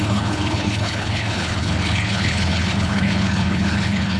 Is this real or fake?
fake